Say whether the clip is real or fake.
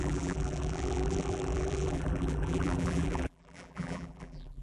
fake